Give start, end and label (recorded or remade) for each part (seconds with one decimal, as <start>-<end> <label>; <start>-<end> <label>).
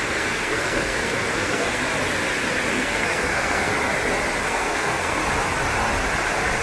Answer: 0.0-1.8 remade; 1.8-2.7 recorded; 2.7-3.7 remade; 3.7-4.4 recorded; 4.4-5.2 remade; 5.2-6.6 recorded